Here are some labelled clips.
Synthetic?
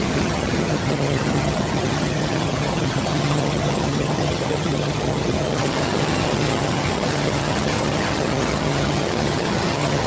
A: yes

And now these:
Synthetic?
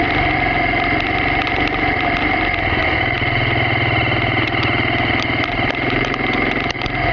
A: no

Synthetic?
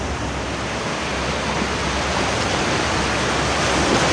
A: no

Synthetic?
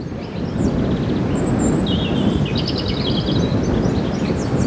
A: no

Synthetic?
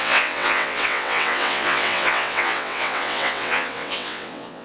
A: yes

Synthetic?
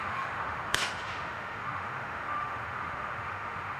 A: yes